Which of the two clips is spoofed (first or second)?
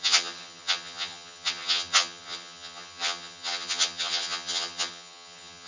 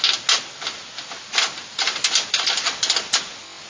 first